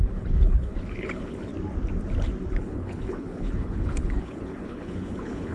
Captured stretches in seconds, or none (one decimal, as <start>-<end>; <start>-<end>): 1.5-2.5